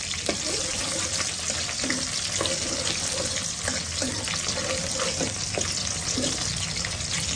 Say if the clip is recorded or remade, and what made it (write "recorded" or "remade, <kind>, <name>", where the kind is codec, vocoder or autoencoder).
recorded